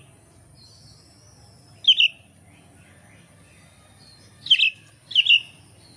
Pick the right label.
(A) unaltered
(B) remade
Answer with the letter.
A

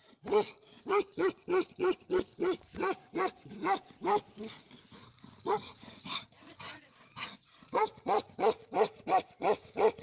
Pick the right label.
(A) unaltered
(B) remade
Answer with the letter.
B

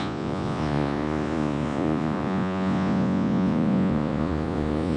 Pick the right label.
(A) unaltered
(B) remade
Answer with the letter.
B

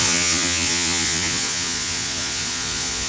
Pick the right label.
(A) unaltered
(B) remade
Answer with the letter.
B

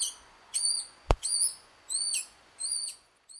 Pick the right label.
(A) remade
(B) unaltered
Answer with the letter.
A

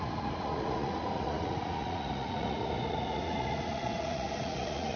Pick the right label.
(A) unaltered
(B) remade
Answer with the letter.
B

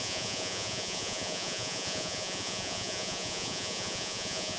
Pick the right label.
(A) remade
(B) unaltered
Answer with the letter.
A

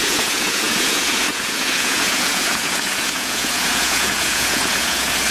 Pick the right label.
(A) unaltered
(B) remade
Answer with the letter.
B